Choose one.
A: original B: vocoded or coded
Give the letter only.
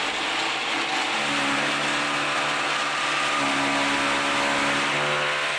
A